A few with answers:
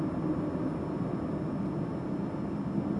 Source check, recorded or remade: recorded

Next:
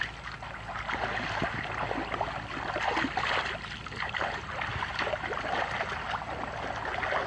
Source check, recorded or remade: recorded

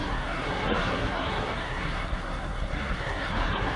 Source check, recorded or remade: remade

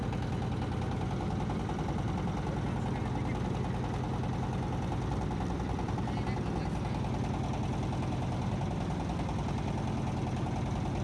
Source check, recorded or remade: recorded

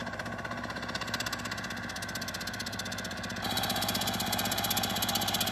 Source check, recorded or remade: recorded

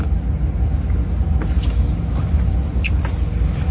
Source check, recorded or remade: recorded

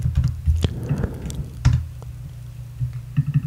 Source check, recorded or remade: recorded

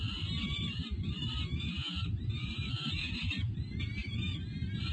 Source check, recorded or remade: recorded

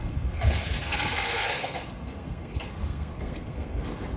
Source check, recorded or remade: remade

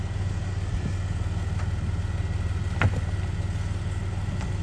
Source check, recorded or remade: recorded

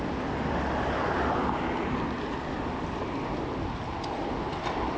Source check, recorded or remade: recorded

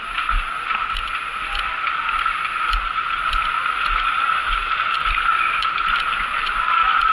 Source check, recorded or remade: remade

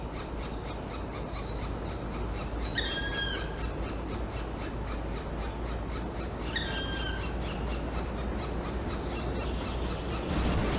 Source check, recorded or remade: recorded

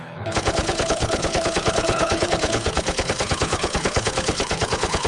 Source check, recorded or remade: remade